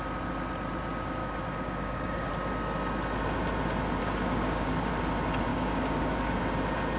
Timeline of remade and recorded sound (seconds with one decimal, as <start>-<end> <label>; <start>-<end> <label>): 0.0-1.2 recorded; 1.2-2.3 remade; 2.3-4.0 recorded; 4.0-4.9 remade; 4.9-5.5 recorded; 5.5-6.4 remade; 6.4-7.0 recorded

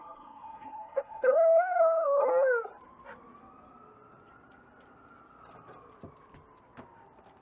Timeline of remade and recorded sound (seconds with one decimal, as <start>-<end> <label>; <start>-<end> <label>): 0.0-2.3 remade; 2.3-7.4 recorded

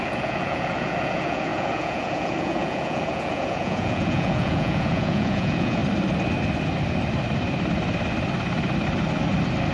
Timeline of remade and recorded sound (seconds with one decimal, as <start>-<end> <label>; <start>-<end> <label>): 0.0-5.8 remade; 5.8-9.7 recorded